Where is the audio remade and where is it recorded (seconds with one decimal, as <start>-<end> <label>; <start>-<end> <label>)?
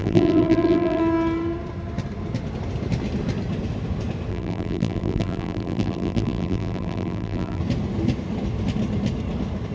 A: 0.0-1.0 remade; 1.0-4.3 recorded; 4.3-7.6 remade; 7.6-9.7 recorded